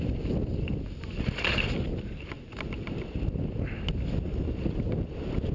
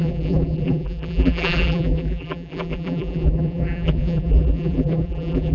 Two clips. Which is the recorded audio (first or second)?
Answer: first